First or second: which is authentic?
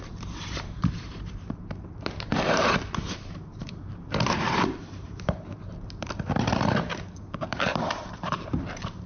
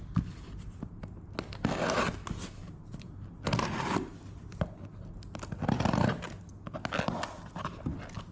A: second